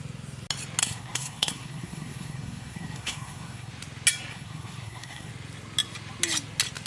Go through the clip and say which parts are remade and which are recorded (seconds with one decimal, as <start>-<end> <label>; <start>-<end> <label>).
0.0-0.8 recorded; 0.8-3.7 remade; 3.7-4.3 recorded; 4.3-5.3 remade; 5.3-6.9 recorded